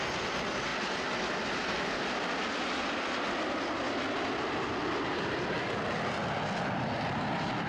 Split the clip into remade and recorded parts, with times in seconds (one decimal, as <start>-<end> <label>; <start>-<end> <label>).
0.0-7.7 recorded